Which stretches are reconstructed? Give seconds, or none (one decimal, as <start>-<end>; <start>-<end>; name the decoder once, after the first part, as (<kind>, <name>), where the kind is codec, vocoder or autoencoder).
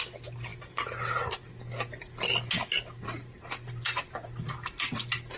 2.9-3.7 (vocoder, BigVGAN v2)